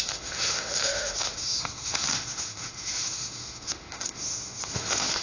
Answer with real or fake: fake